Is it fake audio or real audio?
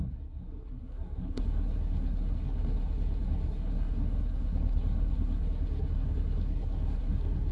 fake